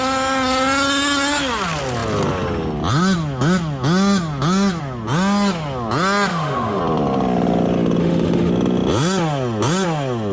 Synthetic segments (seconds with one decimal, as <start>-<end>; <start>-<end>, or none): 6.3-6.8; 8.0-8.5